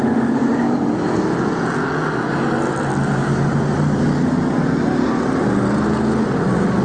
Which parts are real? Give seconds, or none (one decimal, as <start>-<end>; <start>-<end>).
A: 0.0-6.8